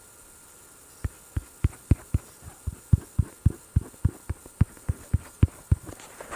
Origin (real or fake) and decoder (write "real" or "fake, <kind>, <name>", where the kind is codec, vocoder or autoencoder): real